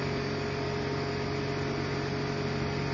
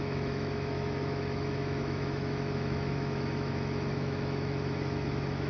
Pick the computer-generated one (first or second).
second